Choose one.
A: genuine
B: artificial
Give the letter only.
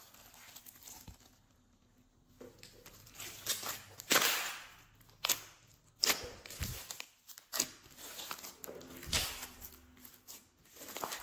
A